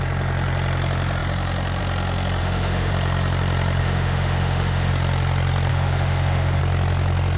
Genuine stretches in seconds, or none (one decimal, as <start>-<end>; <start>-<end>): 0.0-2.4; 2.9-3.8; 4.9-5.7; 6.6-7.4